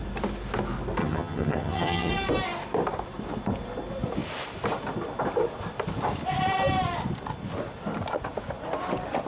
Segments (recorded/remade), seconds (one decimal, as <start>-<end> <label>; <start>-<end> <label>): 0.0-1.0 recorded; 1.0-2.1 remade; 2.1-9.3 recorded